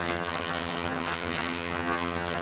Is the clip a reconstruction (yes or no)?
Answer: yes